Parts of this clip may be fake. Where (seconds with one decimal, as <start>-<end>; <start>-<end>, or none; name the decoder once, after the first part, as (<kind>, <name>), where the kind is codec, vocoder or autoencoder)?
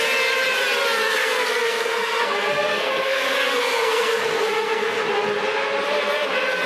1.0-5.0 (codec, SNAC)